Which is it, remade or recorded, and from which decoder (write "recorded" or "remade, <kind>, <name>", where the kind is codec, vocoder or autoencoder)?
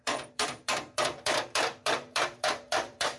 remade, vocoder, BigVGAN v2